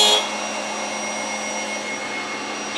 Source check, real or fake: real